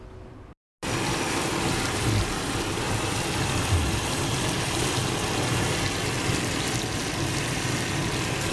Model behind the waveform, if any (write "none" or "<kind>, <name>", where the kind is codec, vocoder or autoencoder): none